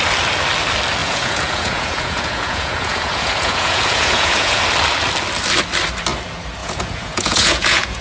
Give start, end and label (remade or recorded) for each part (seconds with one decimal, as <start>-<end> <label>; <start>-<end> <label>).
0.0-1.0 recorded; 1.0-4.6 remade; 4.6-6.6 recorded; 6.6-8.0 remade